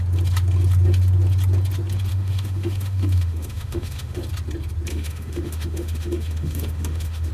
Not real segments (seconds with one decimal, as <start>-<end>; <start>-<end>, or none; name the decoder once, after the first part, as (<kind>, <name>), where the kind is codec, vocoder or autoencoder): 2.1-4.2 (autoencoder, DAC-VAE); 4.9-7.3